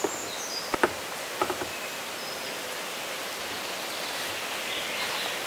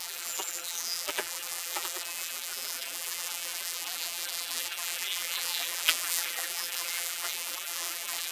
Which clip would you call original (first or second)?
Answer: first